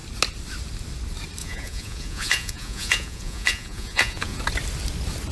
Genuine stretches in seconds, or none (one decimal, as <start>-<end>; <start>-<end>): 0.0-1.4; 4.4-5.3